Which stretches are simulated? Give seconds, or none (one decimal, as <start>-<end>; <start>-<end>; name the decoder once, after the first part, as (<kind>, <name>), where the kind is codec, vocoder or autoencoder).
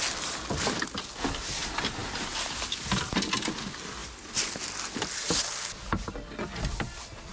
2.0-3.1 (vocoder, BigVGAN v2)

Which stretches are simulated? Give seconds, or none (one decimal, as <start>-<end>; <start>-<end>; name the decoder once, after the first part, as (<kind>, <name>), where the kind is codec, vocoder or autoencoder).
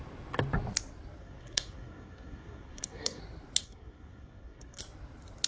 1.2-3.2 (codec, SNAC); 3.6-4.8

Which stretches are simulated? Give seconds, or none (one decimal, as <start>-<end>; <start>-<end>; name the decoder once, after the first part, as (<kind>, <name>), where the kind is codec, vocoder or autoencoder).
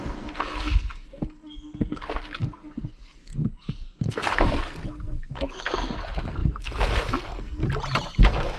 0.0-7.6 (codec, SNAC); 8.2-8.6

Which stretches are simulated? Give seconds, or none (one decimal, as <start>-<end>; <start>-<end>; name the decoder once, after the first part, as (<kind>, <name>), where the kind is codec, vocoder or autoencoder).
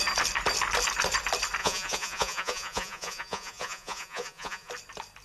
1.6-4.7 (vocoder, Vocos)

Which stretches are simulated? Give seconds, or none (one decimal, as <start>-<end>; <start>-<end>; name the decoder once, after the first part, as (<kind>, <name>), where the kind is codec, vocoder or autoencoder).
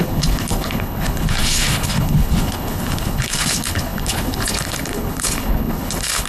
0.0-6.3 (codec, HILCodec)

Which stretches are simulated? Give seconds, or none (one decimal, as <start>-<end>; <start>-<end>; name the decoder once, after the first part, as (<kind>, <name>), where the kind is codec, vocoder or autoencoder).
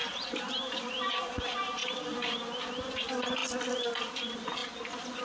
0.0-0.9 (vocoder, BigVGAN v2); 1.8-2.6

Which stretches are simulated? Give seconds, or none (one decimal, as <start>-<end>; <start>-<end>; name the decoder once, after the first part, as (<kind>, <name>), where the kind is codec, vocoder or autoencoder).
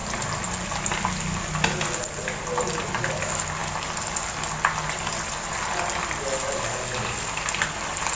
none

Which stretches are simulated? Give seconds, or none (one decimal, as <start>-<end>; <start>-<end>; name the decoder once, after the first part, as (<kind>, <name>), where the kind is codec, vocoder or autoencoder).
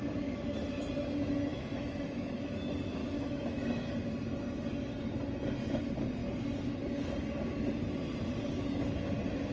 1.5-2.3 (autoencoder, DAC-VAE); 3.0-3.9